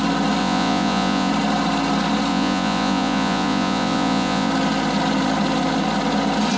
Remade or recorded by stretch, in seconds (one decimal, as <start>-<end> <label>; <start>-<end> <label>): 0.0-0.4 recorded; 0.4-1.3 remade; 1.3-2.3 recorded; 2.3-4.5 remade; 4.5-6.6 recorded